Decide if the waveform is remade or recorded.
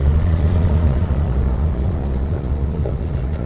remade